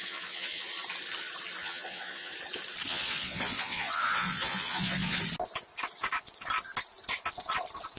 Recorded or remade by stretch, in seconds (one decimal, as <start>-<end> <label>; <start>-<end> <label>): 0.0-0.7 remade; 0.7-1.6 recorded; 1.6-2.3 remade; 2.3-2.9 recorded; 2.9-5.2 remade; 5.2-8.0 recorded